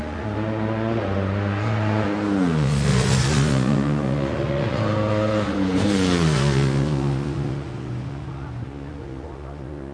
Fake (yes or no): yes